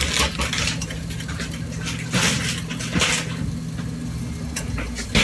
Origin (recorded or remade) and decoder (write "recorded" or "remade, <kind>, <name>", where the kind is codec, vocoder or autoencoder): recorded